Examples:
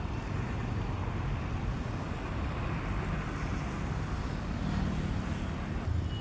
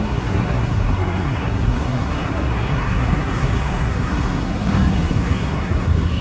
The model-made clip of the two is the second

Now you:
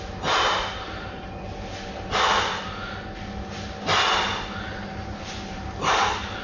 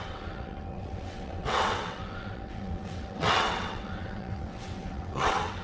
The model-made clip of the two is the second